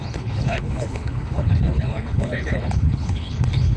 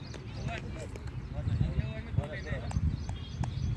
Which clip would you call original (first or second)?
second